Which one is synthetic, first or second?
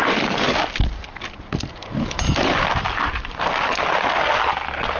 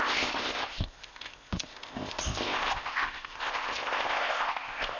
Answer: second